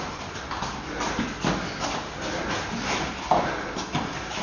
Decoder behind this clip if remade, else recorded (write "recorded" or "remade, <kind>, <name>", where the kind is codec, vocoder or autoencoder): recorded